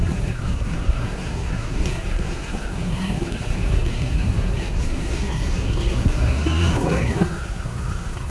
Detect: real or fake fake